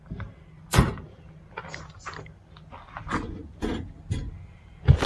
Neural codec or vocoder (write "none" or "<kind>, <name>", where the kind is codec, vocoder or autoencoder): none